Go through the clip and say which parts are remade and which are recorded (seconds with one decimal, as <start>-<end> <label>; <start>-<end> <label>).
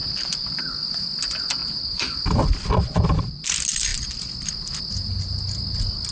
0.0-0.6 remade; 0.6-1.6 recorded; 1.6-2.2 remade; 2.2-6.1 recorded